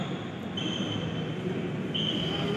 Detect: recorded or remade recorded